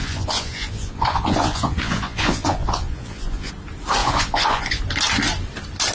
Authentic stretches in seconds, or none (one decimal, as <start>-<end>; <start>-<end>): 3.5-4.0; 4.8-5.9